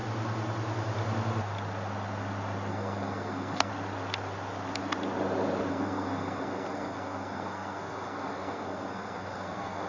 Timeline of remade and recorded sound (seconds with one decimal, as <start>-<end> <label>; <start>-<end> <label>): 0.0-2.7 recorded; 2.7-3.7 remade; 3.7-5.7 recorded; 5.7-9.9 remade